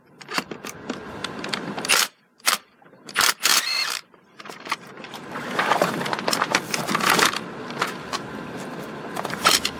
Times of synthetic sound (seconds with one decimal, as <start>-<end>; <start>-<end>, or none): 1.2-2.2; 3.5-6.0